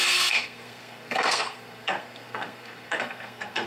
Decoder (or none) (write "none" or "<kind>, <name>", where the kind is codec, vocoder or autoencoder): codec, SNAC